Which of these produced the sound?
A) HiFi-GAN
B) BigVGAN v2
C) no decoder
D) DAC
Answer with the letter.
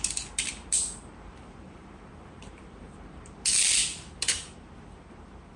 B